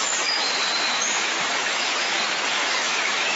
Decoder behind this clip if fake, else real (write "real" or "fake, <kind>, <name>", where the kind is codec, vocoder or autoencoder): fake, autoencoder, DAC-VAE